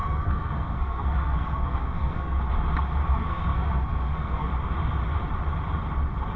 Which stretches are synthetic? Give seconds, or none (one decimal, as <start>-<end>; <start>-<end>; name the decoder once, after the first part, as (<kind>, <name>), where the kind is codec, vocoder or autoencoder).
0.0-2.4 (codec, SNAC); 3.1-4.5